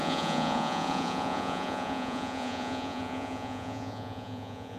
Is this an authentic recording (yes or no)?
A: no